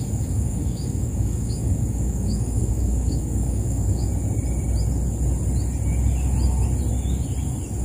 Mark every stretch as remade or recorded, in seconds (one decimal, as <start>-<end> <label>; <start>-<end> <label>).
0.0-4.1 remade; 4.1-7.8 recorded